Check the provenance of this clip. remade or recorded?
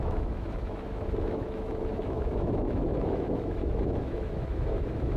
remade